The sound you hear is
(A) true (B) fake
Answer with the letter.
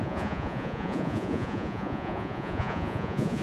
B